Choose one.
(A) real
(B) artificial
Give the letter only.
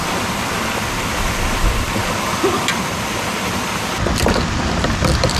A